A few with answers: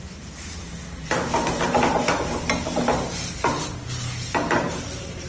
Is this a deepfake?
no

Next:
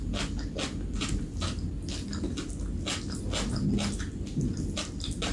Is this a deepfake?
no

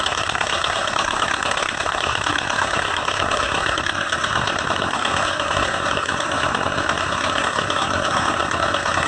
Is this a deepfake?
yes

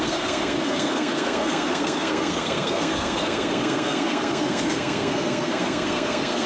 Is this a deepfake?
yes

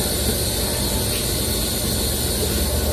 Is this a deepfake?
no